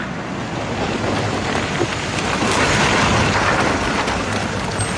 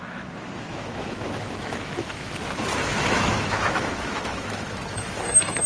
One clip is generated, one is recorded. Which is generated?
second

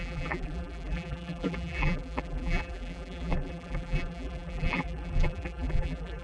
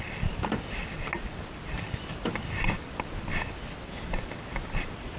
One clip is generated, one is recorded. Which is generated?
first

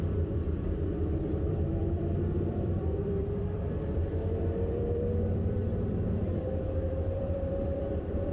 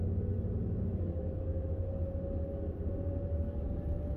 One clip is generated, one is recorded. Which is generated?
first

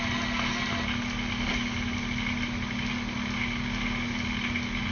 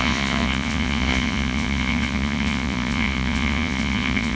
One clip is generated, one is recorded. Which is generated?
second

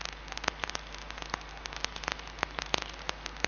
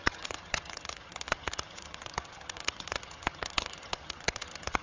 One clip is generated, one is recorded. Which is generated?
second